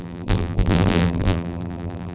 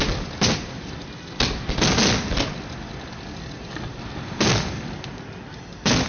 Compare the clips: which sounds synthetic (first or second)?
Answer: first